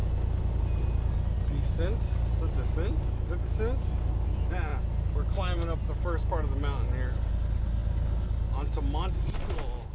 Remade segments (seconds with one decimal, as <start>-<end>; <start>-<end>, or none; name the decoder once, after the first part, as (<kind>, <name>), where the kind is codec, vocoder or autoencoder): none